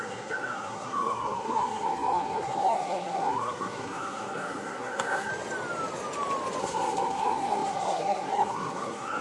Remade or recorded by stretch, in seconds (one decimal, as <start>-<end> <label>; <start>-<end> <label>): 0.0-5.3 remade; 5.3-6.6 recorded; 6.6-9.2 remade